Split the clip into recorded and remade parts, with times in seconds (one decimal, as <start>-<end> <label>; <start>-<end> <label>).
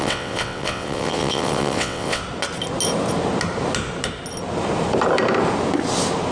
0.0-2.2 remade; 2.2-6.3 recorded